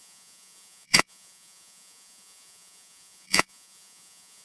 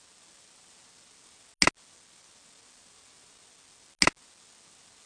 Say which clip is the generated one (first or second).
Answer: first